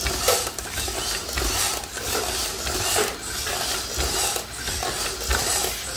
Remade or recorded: recorded